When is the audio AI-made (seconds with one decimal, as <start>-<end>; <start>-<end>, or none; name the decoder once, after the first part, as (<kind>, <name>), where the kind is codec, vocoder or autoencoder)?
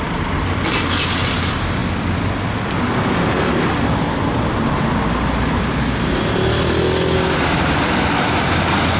none